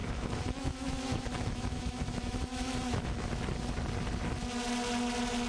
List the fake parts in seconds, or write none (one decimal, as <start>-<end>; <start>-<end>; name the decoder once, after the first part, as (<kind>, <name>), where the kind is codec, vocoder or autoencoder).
0.0-3.3 (autoencoder, DAC-VAE)